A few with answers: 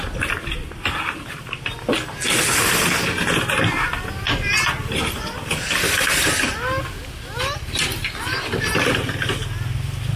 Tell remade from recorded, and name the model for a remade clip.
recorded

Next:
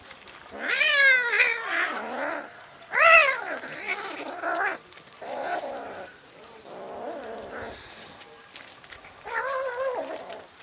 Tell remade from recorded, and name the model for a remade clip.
recorded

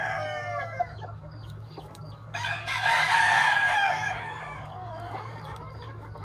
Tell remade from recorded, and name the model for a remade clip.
remade, codec, DAC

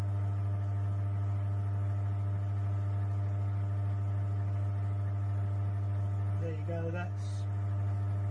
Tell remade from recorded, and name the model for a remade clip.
recorded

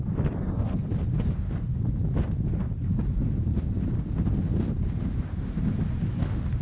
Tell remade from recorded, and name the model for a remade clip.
recorded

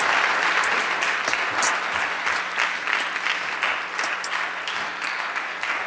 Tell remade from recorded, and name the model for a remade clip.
recorded